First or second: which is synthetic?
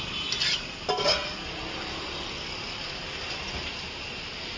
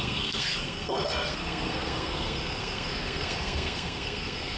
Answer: second